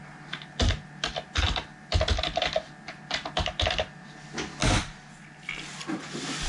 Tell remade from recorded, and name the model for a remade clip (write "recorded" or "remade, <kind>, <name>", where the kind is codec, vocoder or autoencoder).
recorded